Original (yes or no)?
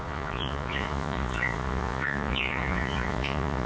no